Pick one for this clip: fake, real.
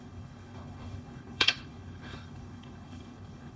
fake